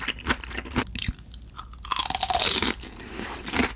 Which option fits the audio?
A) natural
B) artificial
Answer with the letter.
A